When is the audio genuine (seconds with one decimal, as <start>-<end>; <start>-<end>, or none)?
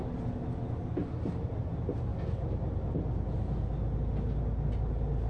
0.0-5.3